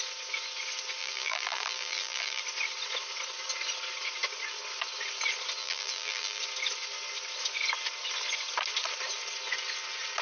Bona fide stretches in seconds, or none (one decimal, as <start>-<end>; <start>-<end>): 0.0-1.0; 2.4-5.6; 6.4-10.2